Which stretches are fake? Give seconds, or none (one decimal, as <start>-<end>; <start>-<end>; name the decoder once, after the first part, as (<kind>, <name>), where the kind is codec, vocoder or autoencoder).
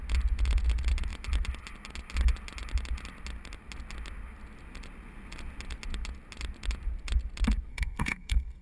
7.7-8.6 (codec, SNAC)